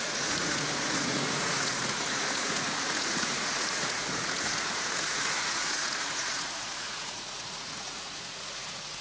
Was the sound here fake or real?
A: fake